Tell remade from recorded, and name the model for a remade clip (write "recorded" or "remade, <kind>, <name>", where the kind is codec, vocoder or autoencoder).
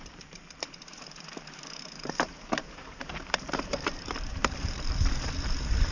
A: remade, vocoder, BigVGAN v2